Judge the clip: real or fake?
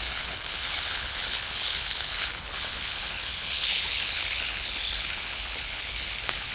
fake